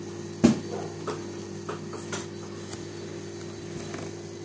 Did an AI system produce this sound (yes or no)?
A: no